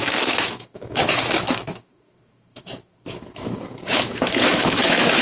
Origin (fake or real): fake